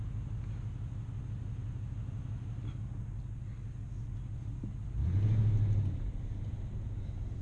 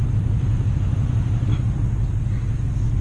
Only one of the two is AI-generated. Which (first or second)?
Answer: second